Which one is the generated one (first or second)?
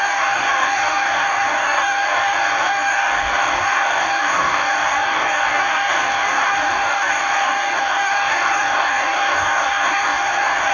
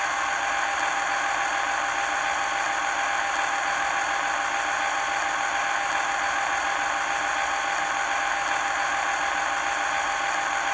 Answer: first